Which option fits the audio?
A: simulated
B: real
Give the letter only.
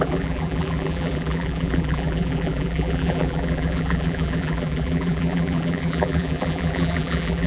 A